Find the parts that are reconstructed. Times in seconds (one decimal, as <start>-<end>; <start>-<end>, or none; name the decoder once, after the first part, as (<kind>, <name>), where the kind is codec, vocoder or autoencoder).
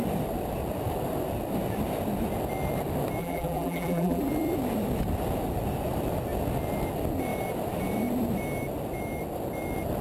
3.2-4.2 (vocoder, BigVGAN v2)